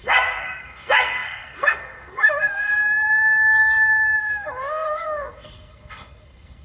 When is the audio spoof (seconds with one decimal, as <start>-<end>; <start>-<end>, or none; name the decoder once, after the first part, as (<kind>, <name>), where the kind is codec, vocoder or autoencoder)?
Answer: 0.0-2.7 (codec, SNAC); 4.2-6.6